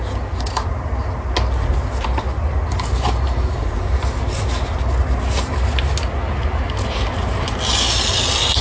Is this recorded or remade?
recorded